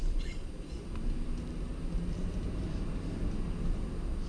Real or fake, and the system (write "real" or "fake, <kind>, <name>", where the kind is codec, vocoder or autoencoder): real